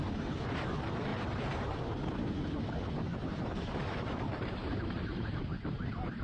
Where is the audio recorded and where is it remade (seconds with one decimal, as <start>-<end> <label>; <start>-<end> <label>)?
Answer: 0.0-1.1 recorded; 1.1-2.0 remade; 2.0-3.1 recorded; 3.1-6.2 remade